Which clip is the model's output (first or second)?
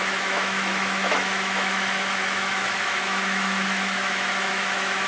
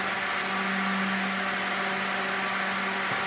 first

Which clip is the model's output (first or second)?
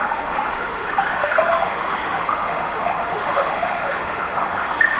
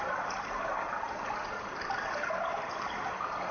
first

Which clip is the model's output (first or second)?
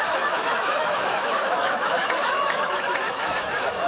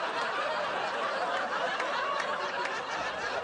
first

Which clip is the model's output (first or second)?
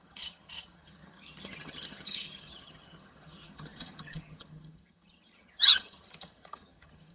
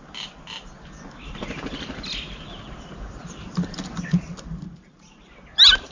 first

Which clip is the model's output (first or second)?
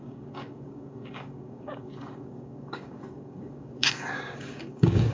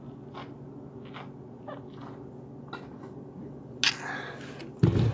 first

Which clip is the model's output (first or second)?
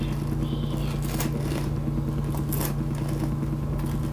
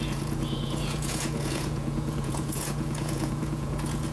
second